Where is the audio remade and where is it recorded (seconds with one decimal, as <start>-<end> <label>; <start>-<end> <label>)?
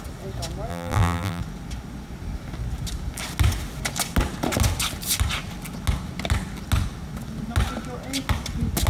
0.0-0.7 recorded; 0.7-1.4 remade; 1.4-8.9 recorded